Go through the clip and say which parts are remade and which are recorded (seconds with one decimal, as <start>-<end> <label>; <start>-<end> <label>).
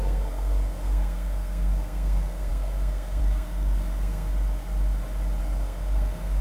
0.0-4.3 remade; 4.3-5.4 recorded; 5.4-6.4 remade